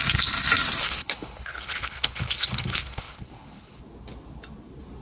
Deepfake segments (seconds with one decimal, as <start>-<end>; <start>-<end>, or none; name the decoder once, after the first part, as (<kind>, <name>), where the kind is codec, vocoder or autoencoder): 0.8-3.8 (codec, HILCodec)